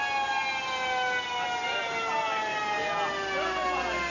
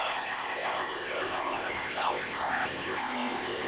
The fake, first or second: second